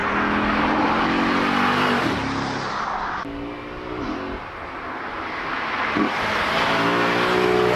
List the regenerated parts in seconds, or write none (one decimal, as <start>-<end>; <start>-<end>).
none